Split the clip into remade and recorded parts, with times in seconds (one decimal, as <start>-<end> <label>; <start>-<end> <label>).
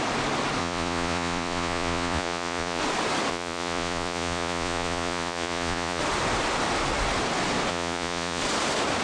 0.0-0.6 recorded; 0.6-2.8 remade; 2.8-3.3 recorded; 3.3-6.0 remade; 6.0-7.7 recorded; 7.7-8.4 remade; 8.4-9.0 recorded